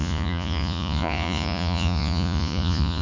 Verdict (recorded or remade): remade